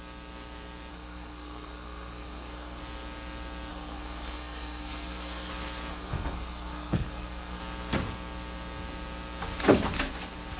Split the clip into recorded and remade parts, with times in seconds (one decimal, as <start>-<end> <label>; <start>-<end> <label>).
0.0-0.9 recorded; 0.9-2.8 remade; 2.8-3.7 recorded; 3.7-5.5 remade; 5.5-5.9 recorded; 5.9-7.6 remade; 7.6-10.6 recorded

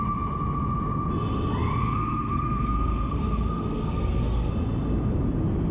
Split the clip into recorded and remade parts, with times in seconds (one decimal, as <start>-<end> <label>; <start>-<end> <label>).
0.0-1.8 recorded; 1.8-4.5 remade; 4.5-5.7 recorded

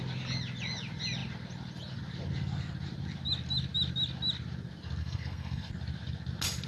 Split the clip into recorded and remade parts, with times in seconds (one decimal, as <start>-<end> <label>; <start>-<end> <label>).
0.0-5.0 recorded; 5.0-5.7 remade; 5.7-6.7 recorded

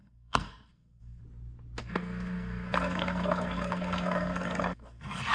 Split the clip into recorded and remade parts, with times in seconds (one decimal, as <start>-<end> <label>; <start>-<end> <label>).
0.0-1.2 remade; 1.2-1.8 recorded; 1.8-5.3 remade